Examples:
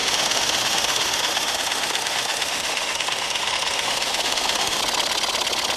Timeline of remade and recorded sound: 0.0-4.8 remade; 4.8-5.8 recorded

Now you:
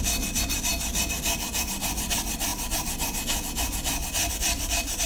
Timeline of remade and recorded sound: 0.0-5.1 recorded

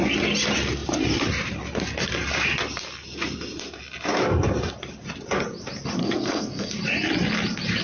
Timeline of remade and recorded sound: 0.0-6.0 recorded; 6.0-6.7 remade; 6.7-7.8 recorded

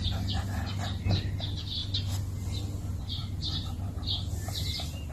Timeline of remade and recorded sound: 0.0-5.1 recorded

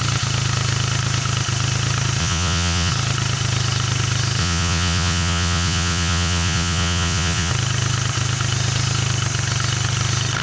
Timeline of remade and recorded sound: 0.0-2.2 recorded; 2.2-2.9 remade; 2.9-4.4 recorded; 4.4-7.5 remade; 7.5-10.4 recorded

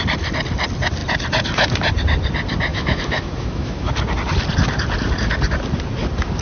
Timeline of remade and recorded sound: 0.0-2.7 recorded; 2.7-3.9 remade; 3.9-6.4 recorded

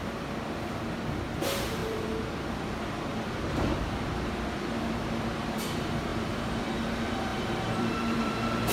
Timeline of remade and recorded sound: 0.0-8.7 remade

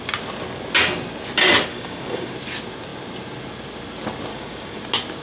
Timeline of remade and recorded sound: 0.0-1.7 recorded; 1.7-2.3 remade; 2.3-4.3 recorded; 4.3-4.8 remade; 4.8-5.2 recorded